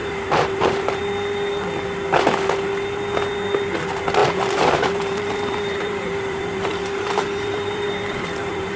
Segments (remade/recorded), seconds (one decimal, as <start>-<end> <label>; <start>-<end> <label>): 0.0-1.0 remade; 1.0-4.2 recorded; 4.2-8.8 remade

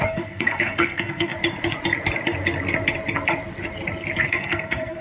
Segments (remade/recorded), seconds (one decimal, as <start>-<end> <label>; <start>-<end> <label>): 0.0-1.3 remade; 1.3-4.3 recorded; 4.3-5.0 remade

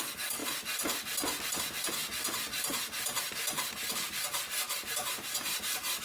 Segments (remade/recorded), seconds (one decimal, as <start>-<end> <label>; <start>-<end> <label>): 0.0-6.0 recorded

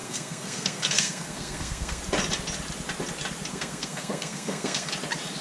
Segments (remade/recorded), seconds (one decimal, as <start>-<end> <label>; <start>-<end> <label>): 0.0-2.0 remade; 2.0-3.5 recorded; 3.5-4.9 remade; 4.9-5.4 recorded

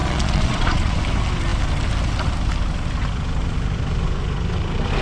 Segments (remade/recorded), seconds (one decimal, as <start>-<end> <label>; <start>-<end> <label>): 0.0-1.0 remade; 1.0-5.0 recorded

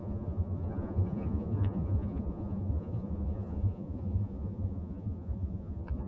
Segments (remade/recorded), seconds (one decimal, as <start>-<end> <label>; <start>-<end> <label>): 0.0-6.1 remade

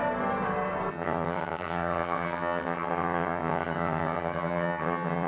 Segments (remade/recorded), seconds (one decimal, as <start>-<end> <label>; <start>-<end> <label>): 0.0-0.9 recorded; 0.9-5.3 remade